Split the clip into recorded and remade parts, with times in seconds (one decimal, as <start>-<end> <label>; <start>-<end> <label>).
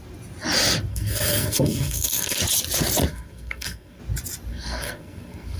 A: 0.0-0.9 recorded; 0.9-2.4 remade; 2.4-3.1 recorded; 3.1-4.0 remade; 4.0-4.5 recorded; 4.5-5.6 remade